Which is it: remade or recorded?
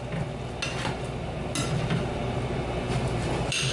recorded